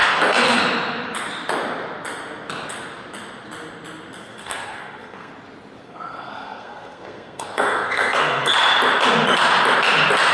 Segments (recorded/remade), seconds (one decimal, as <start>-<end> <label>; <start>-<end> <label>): 0.0-0.6 remade; 0.6-4.2 recorded; 4.2-5.3 remade; 5.3-5.8 recorded; 5.8-8.5 remade; 8.5-10.3 recorded

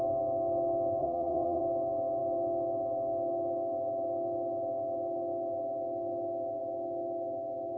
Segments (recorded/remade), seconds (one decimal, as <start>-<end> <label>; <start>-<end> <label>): 0.0-1.0 recorded; 1.0-1.6 remade; 1.6-7.8 recorded

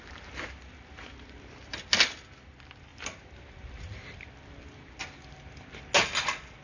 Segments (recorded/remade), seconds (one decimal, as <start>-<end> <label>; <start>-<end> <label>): 0.0-6.6 recorded

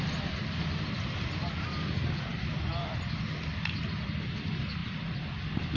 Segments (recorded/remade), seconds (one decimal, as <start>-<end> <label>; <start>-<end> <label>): 0.0-5.8 recorded

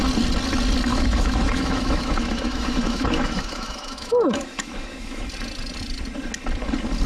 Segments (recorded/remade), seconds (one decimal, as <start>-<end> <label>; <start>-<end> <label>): 0.0-0.9 recorded; 0.9-5.2 remade; 5.2-7.1 recorded

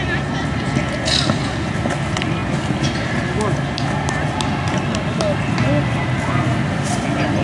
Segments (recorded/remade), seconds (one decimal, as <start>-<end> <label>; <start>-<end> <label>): 0.0-7.4 recorded

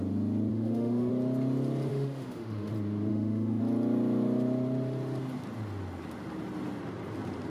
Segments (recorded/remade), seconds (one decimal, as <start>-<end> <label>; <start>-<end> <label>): 0.0-0.5 recorded; 0.5-1.1 remade; 1.1-1.9 recorded; 1.9-2.7 remade; 2.7-3.1 recorded; 3.1-3.6 remade; 3.6-7.5 recorded

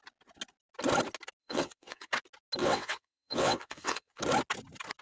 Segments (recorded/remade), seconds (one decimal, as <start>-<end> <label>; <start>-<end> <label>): 0.0-1.4 recorded; 1.4-2.1 remade; 2.1-2.6 recorded; 2.6-4.2 remade; 4.2-5.0 recorded